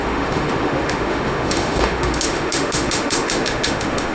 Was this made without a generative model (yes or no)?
no